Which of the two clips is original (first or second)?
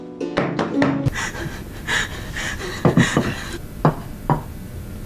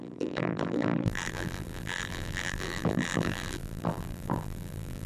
first